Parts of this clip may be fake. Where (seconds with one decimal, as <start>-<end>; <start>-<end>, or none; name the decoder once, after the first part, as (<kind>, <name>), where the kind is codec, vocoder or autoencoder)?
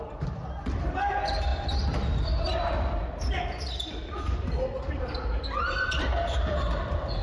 none